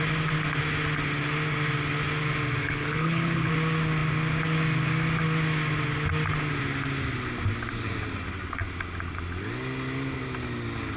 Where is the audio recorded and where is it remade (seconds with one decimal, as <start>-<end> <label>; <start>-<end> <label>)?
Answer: 0.0-2.6 recorded; 2.6-3.5 remade; 3.5-11.0 recorded